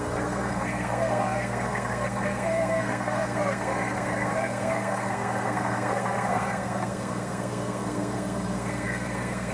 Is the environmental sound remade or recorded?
remade